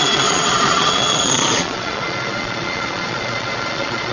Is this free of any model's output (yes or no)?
no